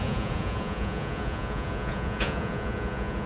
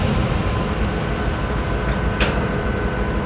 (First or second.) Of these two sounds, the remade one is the first